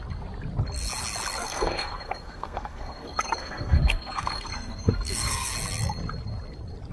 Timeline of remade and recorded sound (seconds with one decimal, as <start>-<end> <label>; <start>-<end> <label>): 0.0-1.4 recorded; 1.4-5.5 remade; 5.5-6.9 recorded